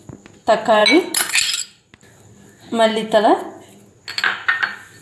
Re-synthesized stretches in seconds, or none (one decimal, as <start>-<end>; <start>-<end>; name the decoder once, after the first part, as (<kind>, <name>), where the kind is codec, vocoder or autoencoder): none